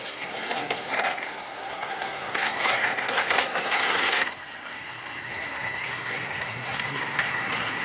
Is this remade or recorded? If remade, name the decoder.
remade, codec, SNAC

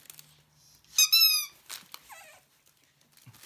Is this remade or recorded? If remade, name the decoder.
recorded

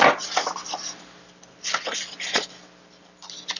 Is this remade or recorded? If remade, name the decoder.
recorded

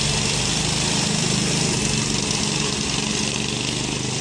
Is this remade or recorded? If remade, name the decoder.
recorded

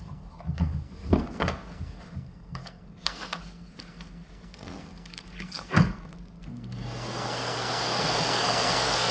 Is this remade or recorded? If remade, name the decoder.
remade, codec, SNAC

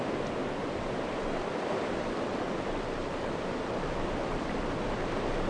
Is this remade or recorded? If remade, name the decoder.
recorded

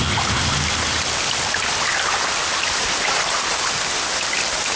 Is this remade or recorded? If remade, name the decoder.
recorded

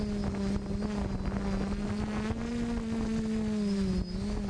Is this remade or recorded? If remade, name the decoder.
recorded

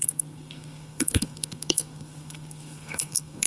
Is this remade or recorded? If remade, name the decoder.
remade, codec, SNAC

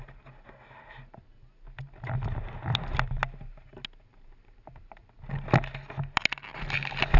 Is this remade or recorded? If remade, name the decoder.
recorded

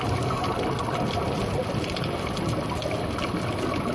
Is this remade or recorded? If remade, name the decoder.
recorded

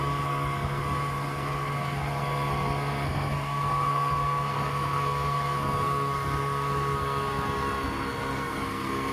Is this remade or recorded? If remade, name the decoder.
remade, codec, SNAC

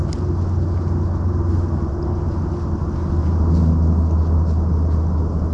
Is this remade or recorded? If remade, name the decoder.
recorded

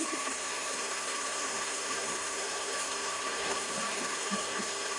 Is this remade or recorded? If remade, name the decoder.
remade, codec, SNAC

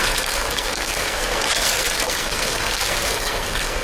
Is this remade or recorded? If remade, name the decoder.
remade, codec, SNAC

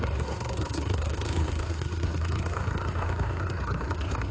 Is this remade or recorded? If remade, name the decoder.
remade, codec, SNAC